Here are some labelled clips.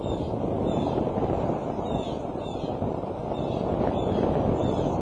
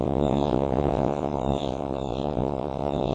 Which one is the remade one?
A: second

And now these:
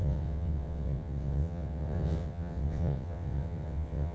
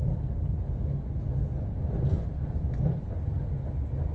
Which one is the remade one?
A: first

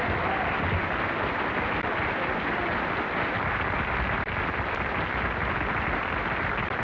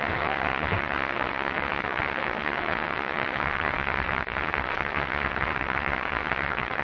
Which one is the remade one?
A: second